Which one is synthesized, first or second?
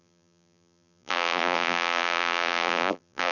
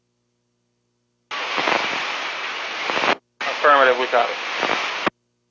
first